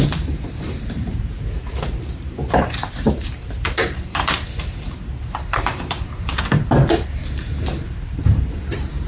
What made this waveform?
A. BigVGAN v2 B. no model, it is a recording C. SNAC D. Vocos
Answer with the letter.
A